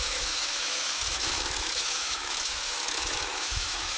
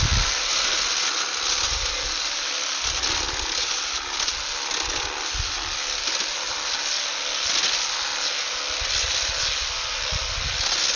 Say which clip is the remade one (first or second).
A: first